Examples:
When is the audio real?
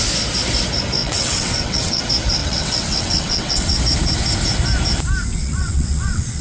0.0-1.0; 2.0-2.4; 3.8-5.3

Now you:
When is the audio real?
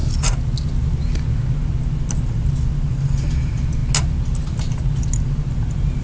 0.0-6.0